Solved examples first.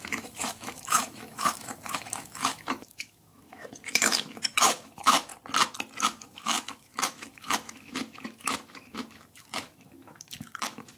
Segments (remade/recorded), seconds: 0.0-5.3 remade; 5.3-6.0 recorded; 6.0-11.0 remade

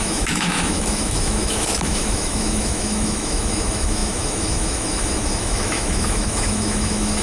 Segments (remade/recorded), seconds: 0.0-7.2 remade

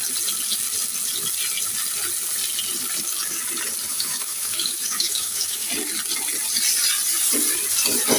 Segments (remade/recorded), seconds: 0.0-3.9 recorded; 3.9-5.7 remade; 5.7-8.2 recorded

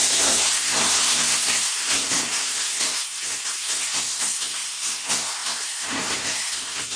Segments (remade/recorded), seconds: 0.0-7.0 remade